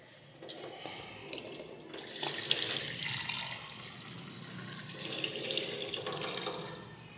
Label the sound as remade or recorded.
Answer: recorded